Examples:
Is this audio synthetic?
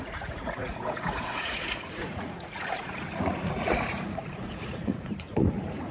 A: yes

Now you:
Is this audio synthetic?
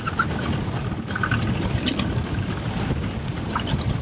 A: no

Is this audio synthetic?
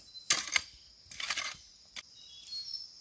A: no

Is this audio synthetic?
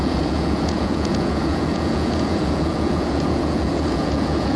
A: yes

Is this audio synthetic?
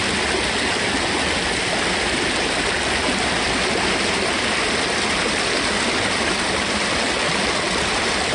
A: no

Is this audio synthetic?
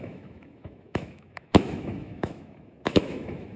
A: yes